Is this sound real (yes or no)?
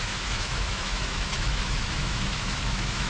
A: no